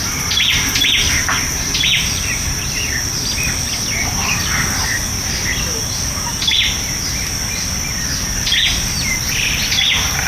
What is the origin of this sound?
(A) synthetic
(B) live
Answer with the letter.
B